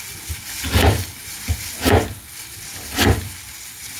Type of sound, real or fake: fake